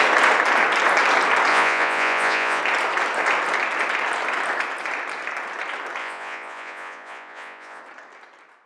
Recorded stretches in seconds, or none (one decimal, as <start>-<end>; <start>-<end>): 0.0-1.5; 2.6-6.0; 7.8-8.7